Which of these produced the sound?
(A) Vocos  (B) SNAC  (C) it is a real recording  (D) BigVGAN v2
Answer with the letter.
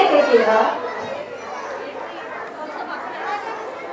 C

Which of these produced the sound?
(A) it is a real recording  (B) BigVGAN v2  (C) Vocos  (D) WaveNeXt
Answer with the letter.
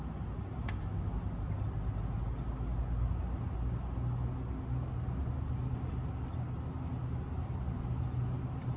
A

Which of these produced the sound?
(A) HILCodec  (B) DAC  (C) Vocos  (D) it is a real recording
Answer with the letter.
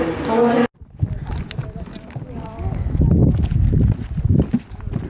D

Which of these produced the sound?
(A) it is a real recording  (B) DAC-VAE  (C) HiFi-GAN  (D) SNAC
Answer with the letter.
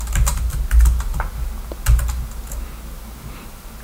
A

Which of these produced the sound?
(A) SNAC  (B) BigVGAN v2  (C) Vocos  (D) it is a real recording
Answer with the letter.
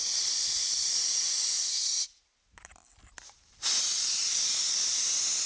D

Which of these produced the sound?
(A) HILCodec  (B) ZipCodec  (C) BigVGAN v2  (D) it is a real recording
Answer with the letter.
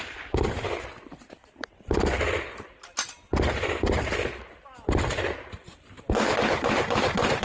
D